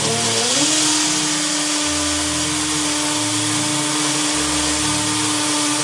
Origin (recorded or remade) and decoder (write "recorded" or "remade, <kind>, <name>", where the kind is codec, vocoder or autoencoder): recorded